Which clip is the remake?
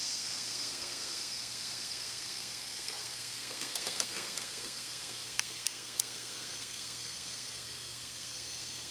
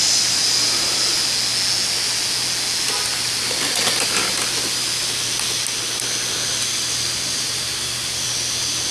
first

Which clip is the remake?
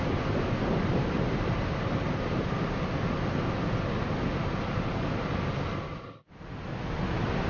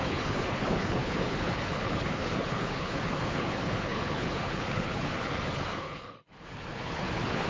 second